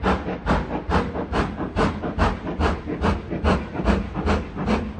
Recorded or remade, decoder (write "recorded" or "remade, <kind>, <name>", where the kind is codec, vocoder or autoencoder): recorded